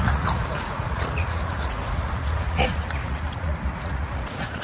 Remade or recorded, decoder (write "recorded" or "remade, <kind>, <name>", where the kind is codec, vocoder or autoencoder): remade, vocoder, Vocos